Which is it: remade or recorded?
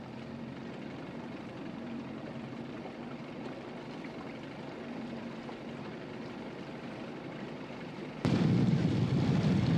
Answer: remade